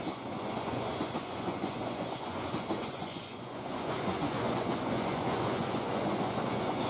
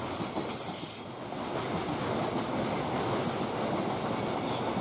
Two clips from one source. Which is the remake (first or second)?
first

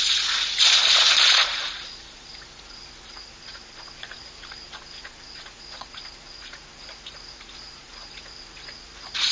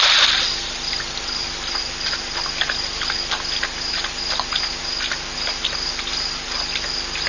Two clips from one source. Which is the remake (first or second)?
first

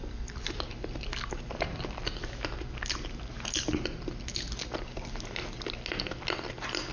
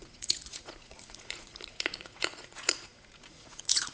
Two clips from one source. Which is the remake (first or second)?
second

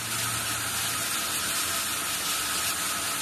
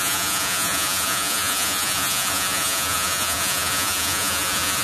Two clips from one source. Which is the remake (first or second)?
second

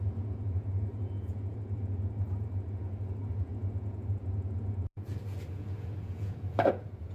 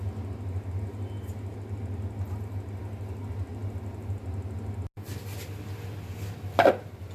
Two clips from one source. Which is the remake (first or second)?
first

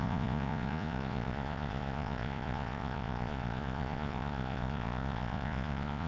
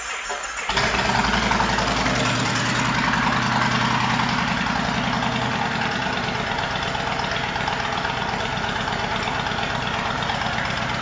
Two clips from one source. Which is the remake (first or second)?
first